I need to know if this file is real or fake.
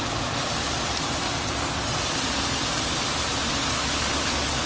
real